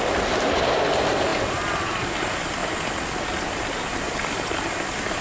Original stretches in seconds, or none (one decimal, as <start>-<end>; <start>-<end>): 0.0-5.2